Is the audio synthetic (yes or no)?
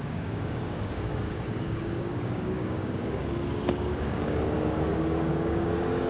yes